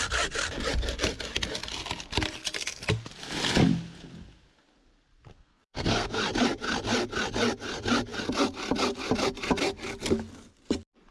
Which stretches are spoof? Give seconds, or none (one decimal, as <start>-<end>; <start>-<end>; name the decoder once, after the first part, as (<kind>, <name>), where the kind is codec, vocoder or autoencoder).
5.3-6.2 (codec, SNAC)